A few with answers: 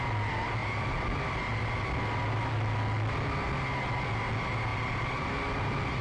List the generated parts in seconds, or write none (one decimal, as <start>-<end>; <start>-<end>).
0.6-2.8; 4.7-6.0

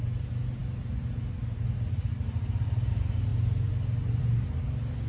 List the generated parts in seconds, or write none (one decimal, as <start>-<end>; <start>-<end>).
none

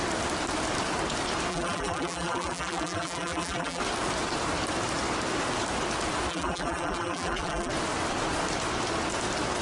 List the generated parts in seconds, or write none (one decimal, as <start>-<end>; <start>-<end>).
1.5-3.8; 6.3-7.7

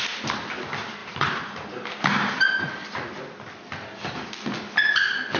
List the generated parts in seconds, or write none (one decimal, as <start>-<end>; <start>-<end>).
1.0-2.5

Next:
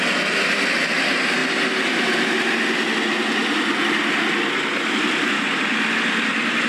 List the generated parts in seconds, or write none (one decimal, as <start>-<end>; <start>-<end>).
none

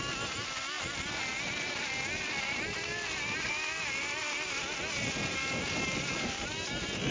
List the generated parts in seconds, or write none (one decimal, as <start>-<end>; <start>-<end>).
0.0-7.1

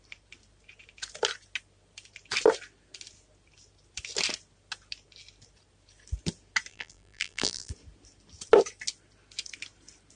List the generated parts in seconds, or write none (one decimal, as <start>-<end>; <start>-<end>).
6.7-7.7

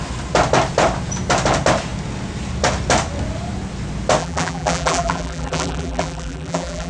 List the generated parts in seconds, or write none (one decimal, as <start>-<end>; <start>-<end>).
4.2-6.9